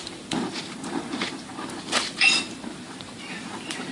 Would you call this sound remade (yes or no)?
yes